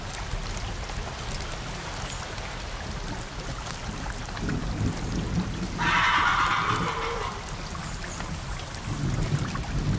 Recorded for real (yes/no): yes